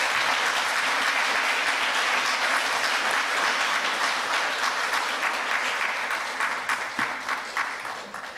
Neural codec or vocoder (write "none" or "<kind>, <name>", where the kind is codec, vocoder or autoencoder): none